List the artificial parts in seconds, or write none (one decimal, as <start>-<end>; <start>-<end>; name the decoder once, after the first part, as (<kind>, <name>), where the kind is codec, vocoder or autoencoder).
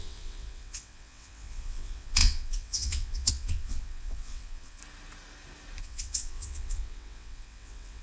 0.0-4.8 (vocoder, WaveNeXt); 5.8-8.0